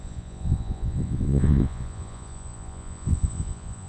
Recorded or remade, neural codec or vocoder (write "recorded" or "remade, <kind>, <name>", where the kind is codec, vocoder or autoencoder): remade, vocoder, Vocos